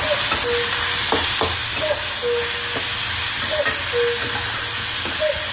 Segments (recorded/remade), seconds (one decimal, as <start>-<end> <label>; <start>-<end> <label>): 0.0-5.5 recorded